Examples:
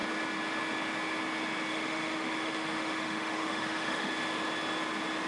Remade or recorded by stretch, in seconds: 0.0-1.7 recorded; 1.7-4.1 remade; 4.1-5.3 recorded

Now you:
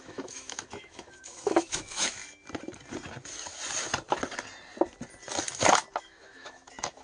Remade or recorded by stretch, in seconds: 0.0-2.2 remade; 2.2-6.0 recorded; 6.0-7.0 remade

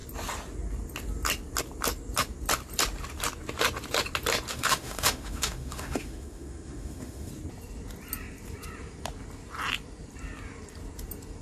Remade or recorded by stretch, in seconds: 0.0-4.5 recorded; 4.5-7.3 remade; 7.3-11.4 recorded

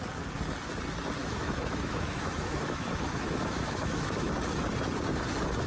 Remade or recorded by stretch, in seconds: 0.0-1.2 recorded; 1.2-4.3 remade; 4.3-5.7 recorded

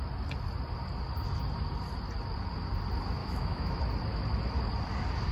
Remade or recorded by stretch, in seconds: 0.0-3.2 recorded; 3.2-3.8 remade; 3.8-5.3 recorded

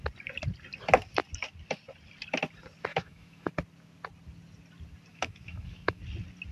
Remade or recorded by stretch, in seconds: 0.0-2.9 recorded; 2.9-3.5 remade; 3.5-5.1 recorded; 5.1-6.0 remade; 6.0-6.5 recorded

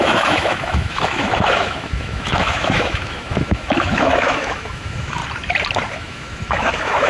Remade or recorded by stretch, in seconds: 0.0-5.2 remade; 5.2-5.9 recorded; 5.9-7.1 remade